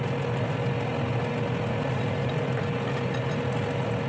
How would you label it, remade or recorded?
recorded